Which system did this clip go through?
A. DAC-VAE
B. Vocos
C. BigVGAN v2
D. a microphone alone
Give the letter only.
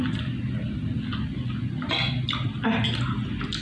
D